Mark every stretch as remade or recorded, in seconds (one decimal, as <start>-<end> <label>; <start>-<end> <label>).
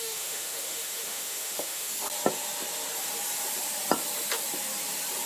0.0-1.9 remade; 1.9-5.3 recorded